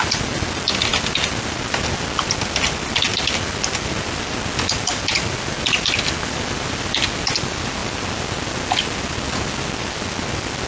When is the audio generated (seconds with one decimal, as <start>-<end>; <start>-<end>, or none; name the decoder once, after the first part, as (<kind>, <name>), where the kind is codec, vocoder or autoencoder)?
none